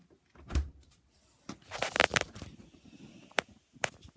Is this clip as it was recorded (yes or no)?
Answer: yes